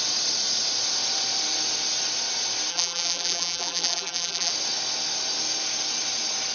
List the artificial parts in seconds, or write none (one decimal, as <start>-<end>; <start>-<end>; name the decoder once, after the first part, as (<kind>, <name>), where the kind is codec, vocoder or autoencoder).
2.7-4.5 (vocoder, BigVGAN v2)